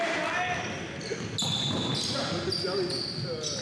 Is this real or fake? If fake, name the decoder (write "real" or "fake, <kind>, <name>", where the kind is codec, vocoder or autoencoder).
real